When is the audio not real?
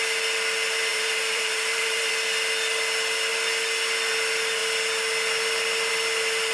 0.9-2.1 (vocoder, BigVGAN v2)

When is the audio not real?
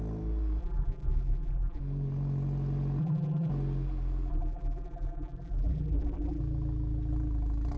0.6-1.8 (vocoder, BigVGAN v2); 3.0-3.5; 4.3-6.4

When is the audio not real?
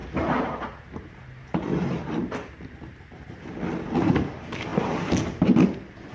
0.0-2.5 (vocoder, BigVGAN v2)